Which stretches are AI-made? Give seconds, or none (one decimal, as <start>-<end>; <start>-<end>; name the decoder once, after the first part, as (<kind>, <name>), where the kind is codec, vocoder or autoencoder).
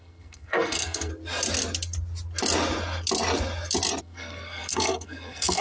0.0-1.1 (codec, SNAC); 4.0-5.6